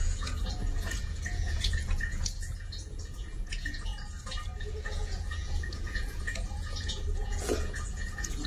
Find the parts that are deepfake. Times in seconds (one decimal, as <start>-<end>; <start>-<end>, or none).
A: 0.0-3.9; 4.6-8.5